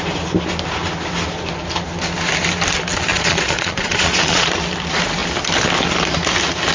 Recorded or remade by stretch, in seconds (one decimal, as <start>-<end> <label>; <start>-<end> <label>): 0.0-3.1 recorded; 3.1-4.5 remade; 4.5-6.7 recorded